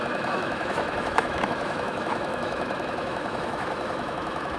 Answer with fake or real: fake